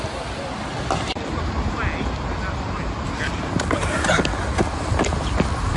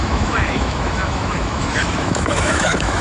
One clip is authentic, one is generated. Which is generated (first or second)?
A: second